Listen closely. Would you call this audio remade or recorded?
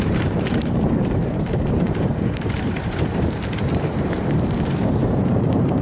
remade